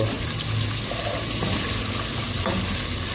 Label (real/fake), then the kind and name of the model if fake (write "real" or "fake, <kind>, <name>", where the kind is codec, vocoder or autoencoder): real